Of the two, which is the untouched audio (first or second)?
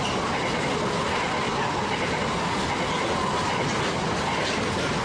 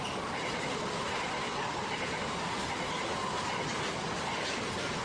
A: first